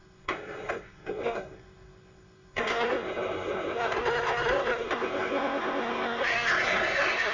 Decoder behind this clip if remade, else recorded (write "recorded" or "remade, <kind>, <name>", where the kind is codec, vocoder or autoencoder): remade, codec, SNAC